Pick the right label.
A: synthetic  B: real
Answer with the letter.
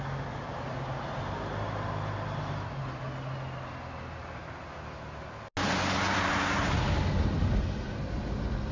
B